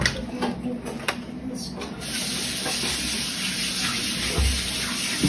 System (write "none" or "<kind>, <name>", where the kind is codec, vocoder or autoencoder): none